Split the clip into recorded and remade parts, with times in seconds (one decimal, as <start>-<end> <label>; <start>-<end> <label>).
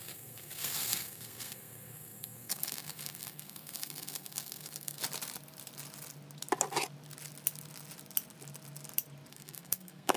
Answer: 0.0-5.0 remade; 5.0-9.3 recorded; 9.3-10.2 remade